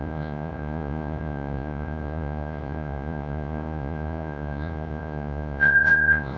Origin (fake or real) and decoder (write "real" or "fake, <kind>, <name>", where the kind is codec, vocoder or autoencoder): fake, vocoder, Vocos